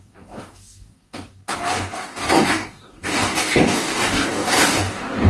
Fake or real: fake